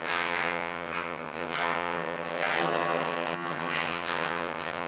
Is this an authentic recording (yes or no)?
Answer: no